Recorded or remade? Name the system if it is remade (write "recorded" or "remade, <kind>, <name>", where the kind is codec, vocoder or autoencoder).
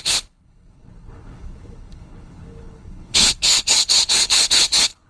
remade, codec, HILCodec